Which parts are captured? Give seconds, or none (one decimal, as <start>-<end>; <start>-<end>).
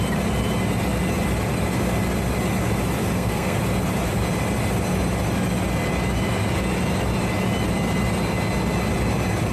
0.0-3.0; 3.6-9.5